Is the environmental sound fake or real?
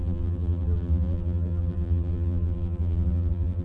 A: fake